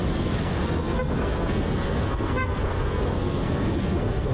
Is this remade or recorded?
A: remade